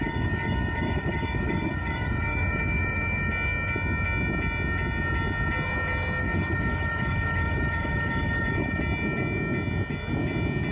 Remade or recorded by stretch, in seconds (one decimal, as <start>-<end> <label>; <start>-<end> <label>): 0.0-3.3 remade; 3.3-6.2 recorded; 6.2-8.8 remade; 8.8-10.7 recorded